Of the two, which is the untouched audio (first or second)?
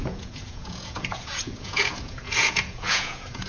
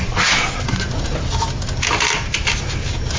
second